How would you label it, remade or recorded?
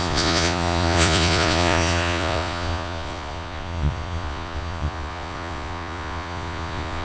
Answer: remade